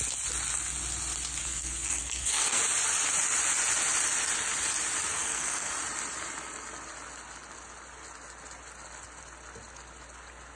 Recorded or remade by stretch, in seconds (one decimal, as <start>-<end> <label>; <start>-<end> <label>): 0.0-1.4 recorded; 1.4-2.6 remade; 2.6-5.1 recorded; 5.1-5.7 remade; 5.7-10.6 recorded